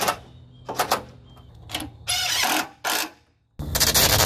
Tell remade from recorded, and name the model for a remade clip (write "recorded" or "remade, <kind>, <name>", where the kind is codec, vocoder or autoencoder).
recorded